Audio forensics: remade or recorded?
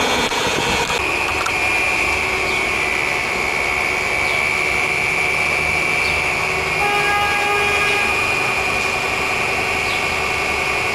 recorded